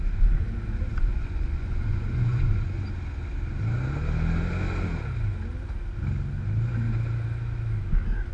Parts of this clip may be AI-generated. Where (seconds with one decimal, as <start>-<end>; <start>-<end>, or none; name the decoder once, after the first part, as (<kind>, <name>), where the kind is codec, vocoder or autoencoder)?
1.1-2.8 (vocoder, Vocos)